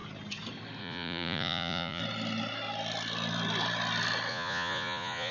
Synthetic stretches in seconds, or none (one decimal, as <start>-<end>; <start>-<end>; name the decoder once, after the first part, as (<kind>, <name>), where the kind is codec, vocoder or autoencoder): 0.8-2.0 (vocoder, Vocos); 4.3-5.3

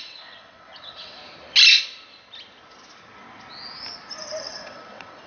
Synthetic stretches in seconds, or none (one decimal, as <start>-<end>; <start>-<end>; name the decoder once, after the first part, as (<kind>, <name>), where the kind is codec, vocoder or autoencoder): 0.0-1.2 (vocoder, WaveNeXt); 4.4-5.3

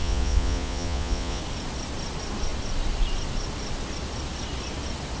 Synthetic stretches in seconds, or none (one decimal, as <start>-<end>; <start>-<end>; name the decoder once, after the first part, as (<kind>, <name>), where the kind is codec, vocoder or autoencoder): 0.0-1.4 (vocoder, Vocos)

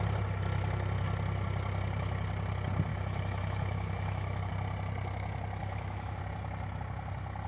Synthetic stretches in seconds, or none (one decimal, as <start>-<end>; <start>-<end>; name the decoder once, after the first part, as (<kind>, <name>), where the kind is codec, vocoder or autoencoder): 2.9-4.5 (autoencoder, DAC-VAE); 5.6-6.2

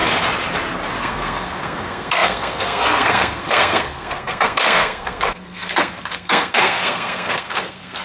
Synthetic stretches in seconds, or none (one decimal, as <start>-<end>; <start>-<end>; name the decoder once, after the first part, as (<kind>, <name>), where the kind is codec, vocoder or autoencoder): 1.0-8.0 (codec, SNAC)

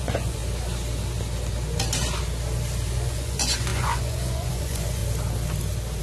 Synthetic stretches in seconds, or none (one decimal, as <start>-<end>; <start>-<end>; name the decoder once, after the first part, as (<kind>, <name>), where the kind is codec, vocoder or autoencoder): 0.0-0.4 (vocoder, Vocos); 2.9-5.0

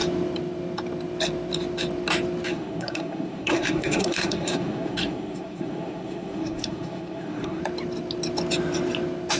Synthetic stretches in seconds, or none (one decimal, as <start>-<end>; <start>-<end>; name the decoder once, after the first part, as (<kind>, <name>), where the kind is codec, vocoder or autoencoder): 2.5-7.6 (codec, SNAC)

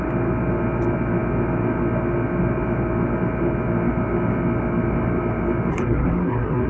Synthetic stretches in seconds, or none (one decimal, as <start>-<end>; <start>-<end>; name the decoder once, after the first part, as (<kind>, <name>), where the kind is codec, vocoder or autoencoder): 5.7-6.7 (codec, SNAC)